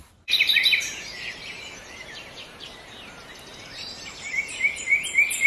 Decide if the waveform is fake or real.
fake